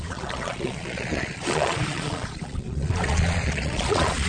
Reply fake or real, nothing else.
fake